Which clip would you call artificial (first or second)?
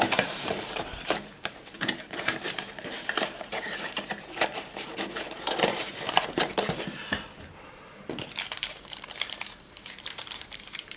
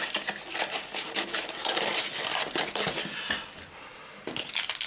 first